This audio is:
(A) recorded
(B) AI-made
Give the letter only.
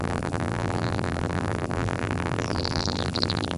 B